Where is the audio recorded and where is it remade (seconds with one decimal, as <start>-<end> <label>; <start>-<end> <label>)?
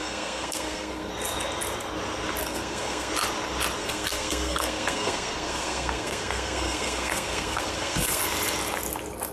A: 0.0-1.1 remade; 1.1-2.4 recorded; 2.4-3.1 remade; 3.1-3.8 recorded; 3.8-8.2 remade; 8.2-9.3 recorded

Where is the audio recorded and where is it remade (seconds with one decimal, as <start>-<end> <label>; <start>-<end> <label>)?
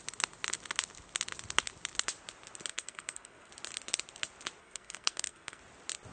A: 0.0-2.7 recorded; 2.7-3.5 remade; 3.5-4.6 recorded; 4.6-5.6 remade; 5.6-6.1 recorded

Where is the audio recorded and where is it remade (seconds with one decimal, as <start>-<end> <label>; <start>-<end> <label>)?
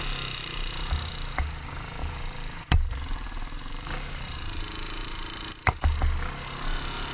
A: 0.0-0.4 recorded; 0.4-1.1 remade; 1.1-2.0 recorded; 2.0-5.8 remade; 5.8-7.1 recorded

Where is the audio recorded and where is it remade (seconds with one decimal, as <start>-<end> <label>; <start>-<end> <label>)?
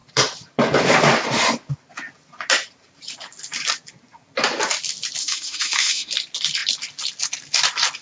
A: 0.0-5.2 recorded; 5.2-6.1 remade; 6.1-8.0 recorded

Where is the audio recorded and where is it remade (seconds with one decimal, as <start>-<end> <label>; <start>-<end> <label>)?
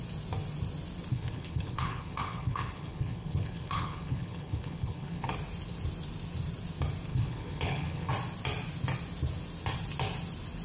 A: 0.0-1.1 recorded; 1.1-5.3 remade; 5.3-7.1 recorded; 7.1-8.1 remade; 8.1-10.6 recorded